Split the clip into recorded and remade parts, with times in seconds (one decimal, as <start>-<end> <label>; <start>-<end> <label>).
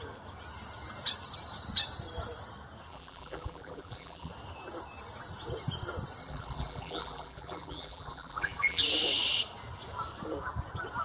0.0-2.9 recorded; 2.9-4.3 remade; 4.3-6.2 recorded; 6.2-8.8 remade; 8.8-11.0 recorded